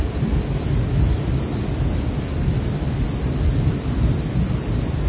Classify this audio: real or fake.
real